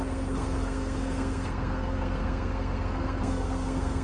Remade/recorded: remade